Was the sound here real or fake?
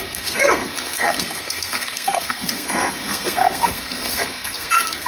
fake